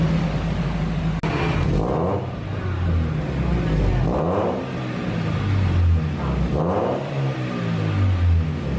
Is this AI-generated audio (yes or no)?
no